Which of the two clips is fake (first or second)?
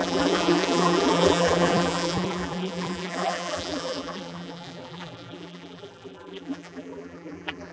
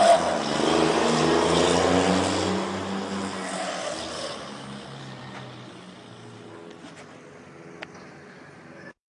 first